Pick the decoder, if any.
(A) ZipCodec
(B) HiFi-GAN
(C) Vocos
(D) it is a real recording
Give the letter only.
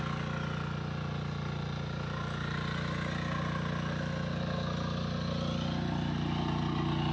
D